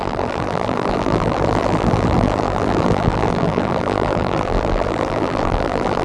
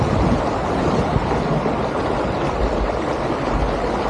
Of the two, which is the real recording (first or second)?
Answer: second